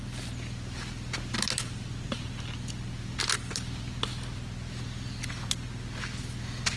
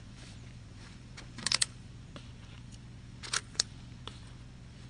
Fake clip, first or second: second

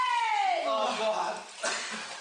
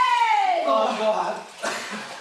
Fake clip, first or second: second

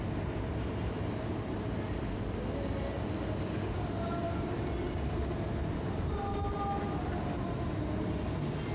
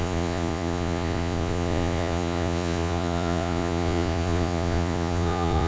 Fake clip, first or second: second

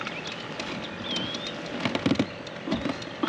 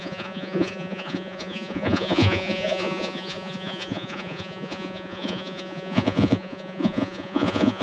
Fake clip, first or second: second